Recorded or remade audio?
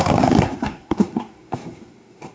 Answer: remade